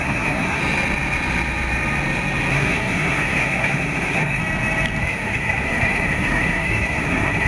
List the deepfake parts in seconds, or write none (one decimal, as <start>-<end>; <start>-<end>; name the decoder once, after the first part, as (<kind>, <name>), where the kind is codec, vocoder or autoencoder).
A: 0.0-0.6 (codec, SNAC); 2.5-4.4; 5.0-7.5